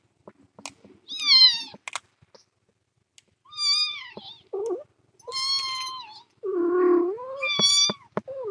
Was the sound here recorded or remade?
recorded